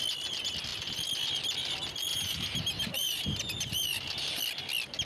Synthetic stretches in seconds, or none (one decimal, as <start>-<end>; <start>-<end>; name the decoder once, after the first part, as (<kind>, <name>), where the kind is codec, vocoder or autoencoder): 2.1-4.4 (vocoder, BigVGAN v2)

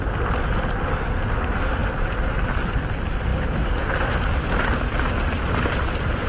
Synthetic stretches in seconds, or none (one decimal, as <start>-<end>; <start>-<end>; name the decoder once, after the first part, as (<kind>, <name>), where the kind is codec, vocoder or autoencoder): none

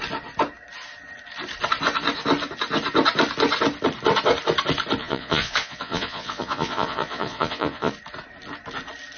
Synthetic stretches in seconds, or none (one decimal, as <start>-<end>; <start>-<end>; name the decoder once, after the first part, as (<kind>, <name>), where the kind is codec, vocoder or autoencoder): 5.0-7.9 (vocoder, Vocos)

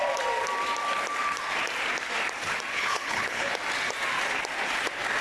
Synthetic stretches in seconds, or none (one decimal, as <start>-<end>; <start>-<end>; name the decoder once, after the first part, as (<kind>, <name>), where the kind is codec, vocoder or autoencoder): 2.7-3.5 (codec, HILCodec)

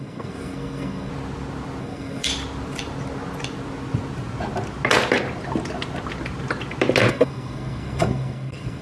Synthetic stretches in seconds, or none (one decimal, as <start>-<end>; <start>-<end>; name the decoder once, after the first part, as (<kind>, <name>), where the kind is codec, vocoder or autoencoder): 0.0-1.1 (codec, SNAC); 1.8-2.3; 7.1-8.8

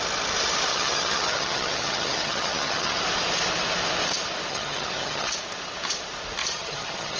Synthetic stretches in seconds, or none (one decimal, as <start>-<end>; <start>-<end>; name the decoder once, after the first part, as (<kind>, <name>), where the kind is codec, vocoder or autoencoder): 0.7-3.0 (vocoder, HiFi-GAN); 4.5-5.3; 6.4-7.2